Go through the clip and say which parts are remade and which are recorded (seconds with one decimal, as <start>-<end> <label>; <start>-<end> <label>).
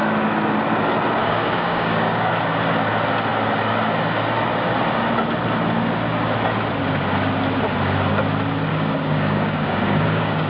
0.0-1.2 recorded; 1.2-2.3 remade; 2.3-8.7 recorded; 8.7-10.5 remade